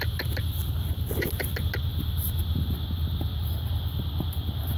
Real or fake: real